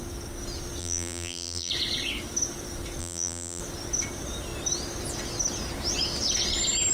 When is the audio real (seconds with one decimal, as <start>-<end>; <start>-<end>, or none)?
0.0-0.8; 1.7-3.0; 3.6-6.9